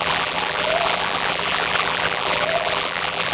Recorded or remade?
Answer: remade